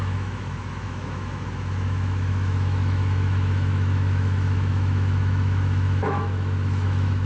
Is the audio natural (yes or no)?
no